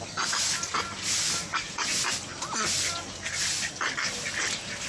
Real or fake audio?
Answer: real